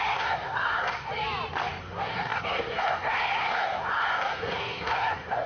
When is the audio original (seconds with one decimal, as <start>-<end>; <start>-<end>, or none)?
1.1-1.8